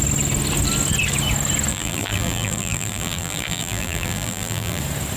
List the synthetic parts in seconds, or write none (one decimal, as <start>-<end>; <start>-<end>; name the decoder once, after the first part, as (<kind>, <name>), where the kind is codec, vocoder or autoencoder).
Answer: 1.7-4.8 (vocoder, BigVGAN v2)